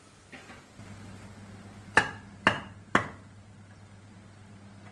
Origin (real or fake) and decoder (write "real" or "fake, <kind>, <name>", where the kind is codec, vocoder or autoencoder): real